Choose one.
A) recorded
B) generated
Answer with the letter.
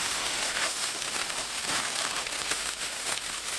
B